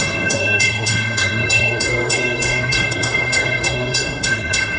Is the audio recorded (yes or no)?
no